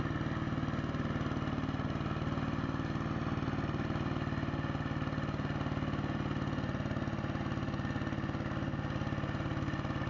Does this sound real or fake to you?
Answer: real